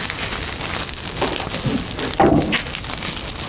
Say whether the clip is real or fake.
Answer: real